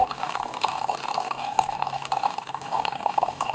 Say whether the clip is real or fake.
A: fake